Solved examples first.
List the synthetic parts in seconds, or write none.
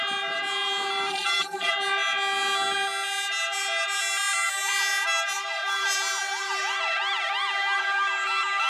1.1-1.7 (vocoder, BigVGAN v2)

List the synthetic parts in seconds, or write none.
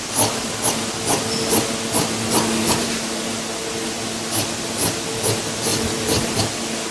2.6-3.2 (vocoder, BigVGAN v2); 5.7-6.3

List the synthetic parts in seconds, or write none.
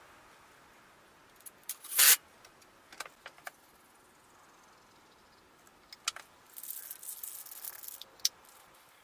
none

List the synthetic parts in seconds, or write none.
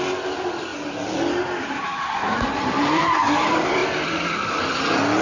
0.0-0.7 (vocoder, BigVGAN v2); 2.6-5.2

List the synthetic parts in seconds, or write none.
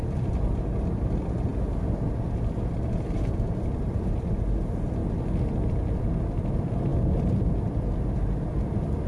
0.0-5.0 (vocoder, BigVGAN v2); 6.4-9.1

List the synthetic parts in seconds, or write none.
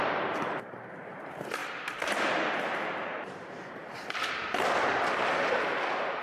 0.0-3.8 (vocoder, BigVGAN v2)